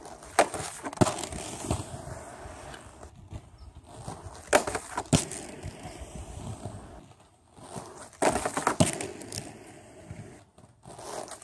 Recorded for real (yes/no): yes